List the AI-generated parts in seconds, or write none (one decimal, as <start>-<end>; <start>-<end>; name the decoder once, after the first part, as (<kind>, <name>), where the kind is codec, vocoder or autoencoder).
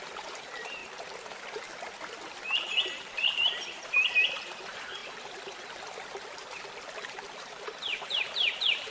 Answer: 0.0-0.8 (vocoder, BigVGAN v2); 1.9-5.0; 7.4-8.9